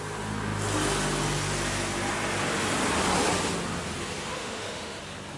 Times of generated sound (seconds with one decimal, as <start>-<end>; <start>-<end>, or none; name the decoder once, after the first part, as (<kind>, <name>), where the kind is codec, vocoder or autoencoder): 4.3-5.0 (autoencoder, DAC-VAE)